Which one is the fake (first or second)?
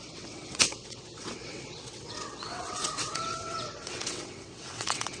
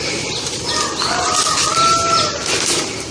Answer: first